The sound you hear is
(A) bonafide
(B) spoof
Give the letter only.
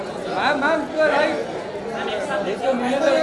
A